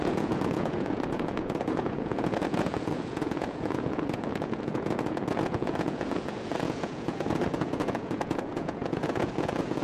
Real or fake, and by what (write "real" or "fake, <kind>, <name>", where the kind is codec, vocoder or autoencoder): fake, vocoder, Vocos